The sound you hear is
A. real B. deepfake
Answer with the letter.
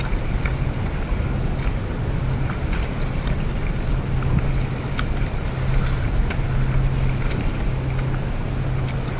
A